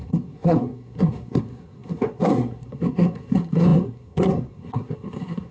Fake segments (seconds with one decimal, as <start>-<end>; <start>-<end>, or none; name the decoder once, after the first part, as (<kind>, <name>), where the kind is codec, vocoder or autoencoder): 0.0-5.5 (codec, SNAC)